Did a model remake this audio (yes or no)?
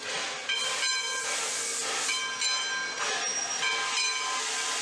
no